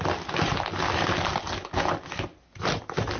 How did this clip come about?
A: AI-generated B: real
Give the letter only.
B